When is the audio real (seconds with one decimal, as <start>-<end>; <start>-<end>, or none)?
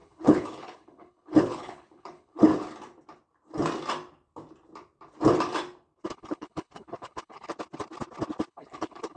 2.5-6.1; 7.5-8.5